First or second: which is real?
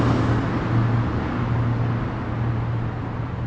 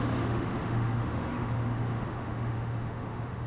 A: first